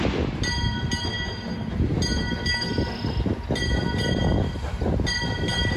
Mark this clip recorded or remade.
recorded